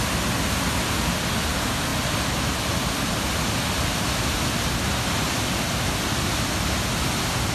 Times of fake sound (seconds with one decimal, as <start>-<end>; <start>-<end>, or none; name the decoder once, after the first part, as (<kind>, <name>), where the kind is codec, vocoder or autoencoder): none